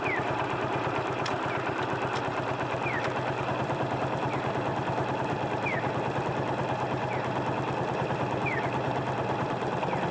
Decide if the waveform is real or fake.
real